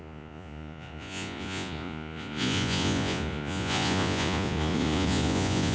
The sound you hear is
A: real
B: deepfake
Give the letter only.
B